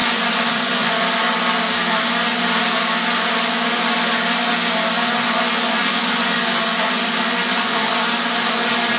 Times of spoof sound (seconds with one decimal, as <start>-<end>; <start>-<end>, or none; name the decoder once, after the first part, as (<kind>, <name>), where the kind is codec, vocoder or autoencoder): 0.0-1.2 (vocoder, Vocos); 5.8-7.9